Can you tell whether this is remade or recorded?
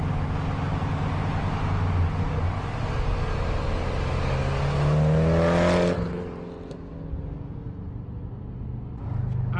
recorded